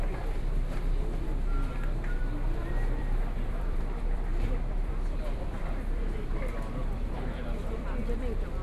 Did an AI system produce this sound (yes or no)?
yes